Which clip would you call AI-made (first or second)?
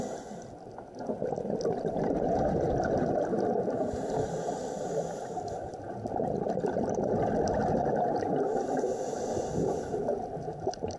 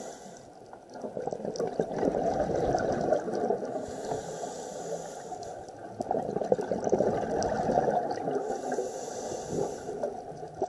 first